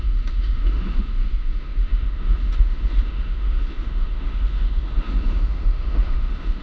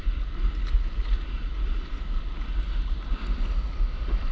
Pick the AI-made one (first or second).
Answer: first